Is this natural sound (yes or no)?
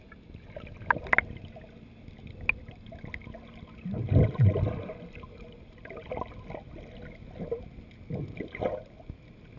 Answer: yes